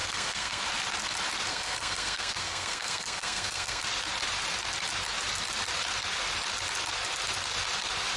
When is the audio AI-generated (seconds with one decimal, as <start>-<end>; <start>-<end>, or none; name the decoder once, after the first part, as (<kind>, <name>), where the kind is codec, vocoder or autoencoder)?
0.0-0.6 (codec, SNAC); 1.5-3.8